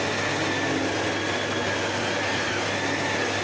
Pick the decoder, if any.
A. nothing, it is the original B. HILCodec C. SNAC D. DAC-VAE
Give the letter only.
A